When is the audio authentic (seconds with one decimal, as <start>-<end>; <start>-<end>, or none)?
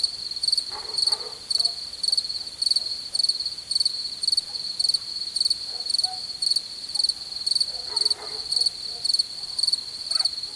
0.0-10.6